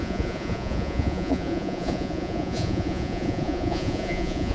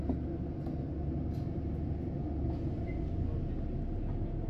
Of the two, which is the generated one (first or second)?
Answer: first